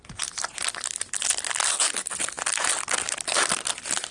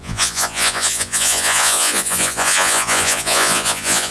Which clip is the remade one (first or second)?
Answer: second